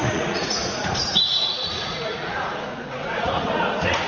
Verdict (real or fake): fake